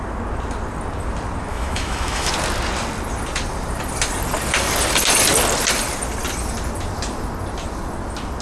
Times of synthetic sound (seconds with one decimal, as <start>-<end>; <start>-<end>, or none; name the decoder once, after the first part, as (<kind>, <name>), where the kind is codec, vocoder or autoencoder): 1.5-2.3 (autoencoder, DAC-VAE)

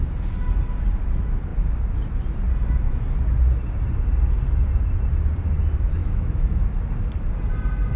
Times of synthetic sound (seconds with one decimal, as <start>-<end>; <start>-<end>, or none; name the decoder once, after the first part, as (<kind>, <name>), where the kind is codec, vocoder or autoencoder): 6.0-6.6 (autoencoder, DAC-VAE)

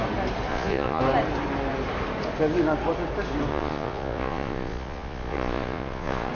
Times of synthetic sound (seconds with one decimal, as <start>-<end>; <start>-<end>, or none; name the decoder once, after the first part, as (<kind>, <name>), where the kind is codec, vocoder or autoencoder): 0.5-1.0 (vocoder, Vocos); 3.5-6.3

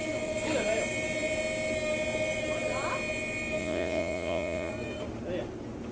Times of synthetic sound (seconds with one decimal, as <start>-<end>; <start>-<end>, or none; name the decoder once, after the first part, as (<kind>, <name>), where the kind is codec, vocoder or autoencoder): 3.6-4.7 (vocoder, Vocos)